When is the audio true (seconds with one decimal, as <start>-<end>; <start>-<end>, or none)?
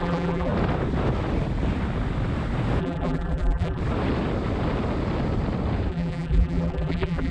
0.5-2.8; 3.8-5.9